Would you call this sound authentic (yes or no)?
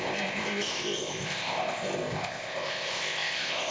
no